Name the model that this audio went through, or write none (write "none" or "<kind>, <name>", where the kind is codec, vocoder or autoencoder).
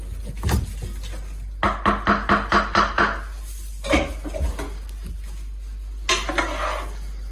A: none